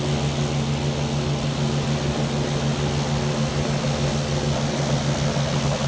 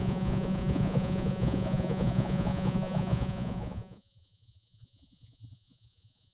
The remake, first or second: second